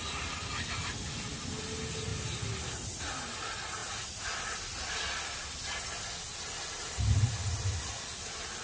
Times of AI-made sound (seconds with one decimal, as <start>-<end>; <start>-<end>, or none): none